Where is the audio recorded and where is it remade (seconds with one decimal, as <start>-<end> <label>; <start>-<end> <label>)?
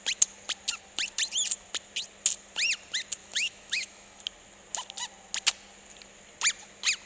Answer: 0.0-3.2 recorded; 3.2-4.2 remade; 4.2-7.1 recorded